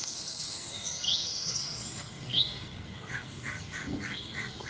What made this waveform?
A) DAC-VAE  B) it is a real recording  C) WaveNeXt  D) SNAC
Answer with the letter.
D